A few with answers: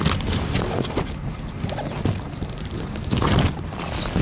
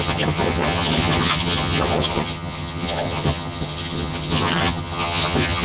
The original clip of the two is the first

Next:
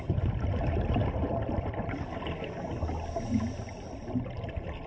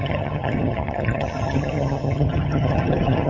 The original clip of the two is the first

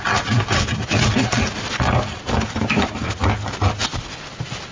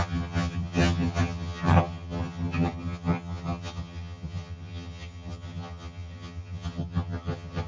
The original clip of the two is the first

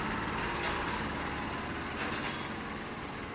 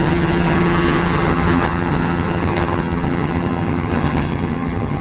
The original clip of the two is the first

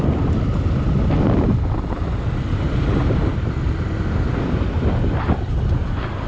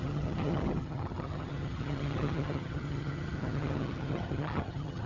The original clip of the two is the first